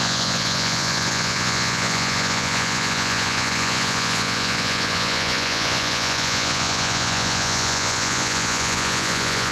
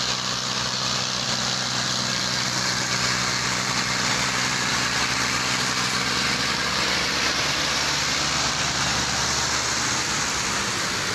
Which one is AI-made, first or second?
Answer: first